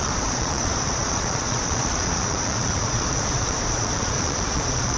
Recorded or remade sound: remade